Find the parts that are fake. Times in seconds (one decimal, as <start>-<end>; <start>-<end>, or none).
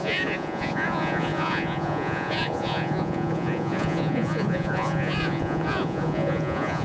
0.0-6.8